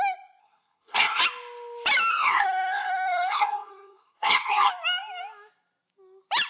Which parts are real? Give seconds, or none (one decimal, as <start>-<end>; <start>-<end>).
0.0-0.4; 1.2-2.1; 4.7-6.5